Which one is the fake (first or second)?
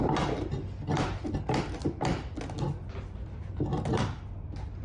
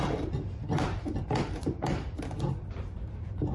second